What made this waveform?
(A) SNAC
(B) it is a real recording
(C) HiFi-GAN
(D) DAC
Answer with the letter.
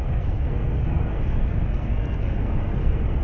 A